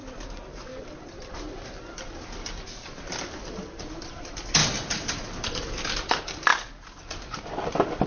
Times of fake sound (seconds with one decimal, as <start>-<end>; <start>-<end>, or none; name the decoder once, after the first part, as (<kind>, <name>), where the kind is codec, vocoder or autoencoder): 0.6-4.6 (vocoder, BigVGAN v2); 6.1-6.5; 7.1-8.1